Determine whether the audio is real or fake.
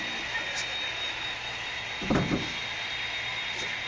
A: real